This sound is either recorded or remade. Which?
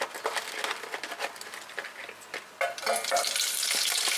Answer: recorded